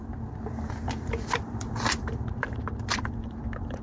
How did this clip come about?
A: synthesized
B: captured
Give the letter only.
A